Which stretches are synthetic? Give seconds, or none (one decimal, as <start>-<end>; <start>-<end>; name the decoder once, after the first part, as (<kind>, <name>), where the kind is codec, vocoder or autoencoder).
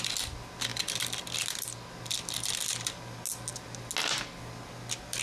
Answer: none